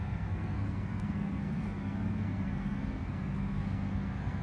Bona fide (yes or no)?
no